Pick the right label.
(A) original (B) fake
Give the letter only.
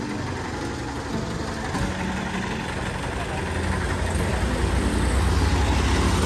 A